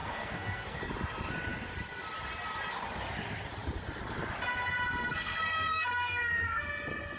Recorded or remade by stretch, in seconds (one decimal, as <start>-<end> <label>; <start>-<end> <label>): 0.0-0.8 remade; 0.8-5.0 recorded; 5.0-6.6 remade; 6.6-7.2 recorded